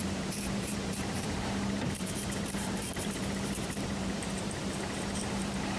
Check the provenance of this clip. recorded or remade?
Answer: remade